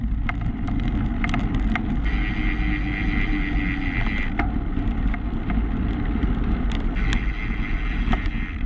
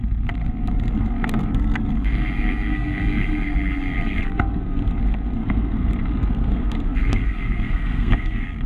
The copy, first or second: second